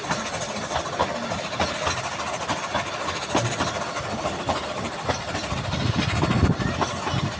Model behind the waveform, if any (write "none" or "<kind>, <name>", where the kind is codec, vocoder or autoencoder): none